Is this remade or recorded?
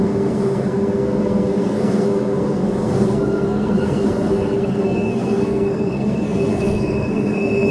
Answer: remade